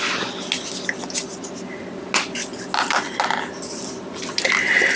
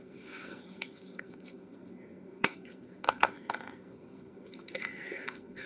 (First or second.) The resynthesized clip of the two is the second